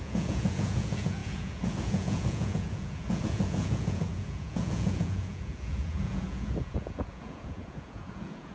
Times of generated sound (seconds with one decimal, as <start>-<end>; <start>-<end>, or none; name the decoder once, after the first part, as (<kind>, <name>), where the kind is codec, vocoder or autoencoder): 0.0-8.5 (vocoder, Vocos)